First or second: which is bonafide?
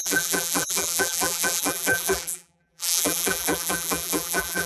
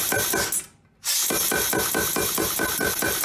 second